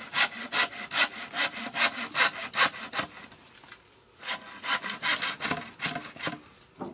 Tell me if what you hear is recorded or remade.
recorded